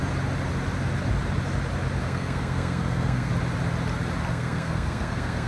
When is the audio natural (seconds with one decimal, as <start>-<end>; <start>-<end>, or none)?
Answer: 0.0-2.0; 3.3-4.3